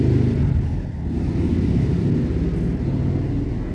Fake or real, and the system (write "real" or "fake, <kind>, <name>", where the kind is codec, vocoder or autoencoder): real